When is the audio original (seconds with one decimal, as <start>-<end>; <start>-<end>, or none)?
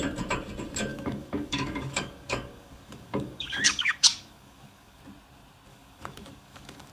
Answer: 0.0-0.9; 5.0-5.7